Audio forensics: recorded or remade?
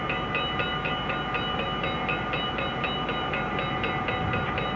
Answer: recorded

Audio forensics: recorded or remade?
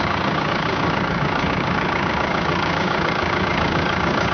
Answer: remade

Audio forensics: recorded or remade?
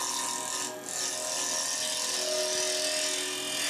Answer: recorded